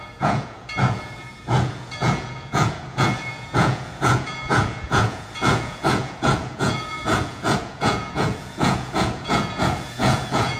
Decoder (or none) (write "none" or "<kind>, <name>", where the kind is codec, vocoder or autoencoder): vocoder, Vocos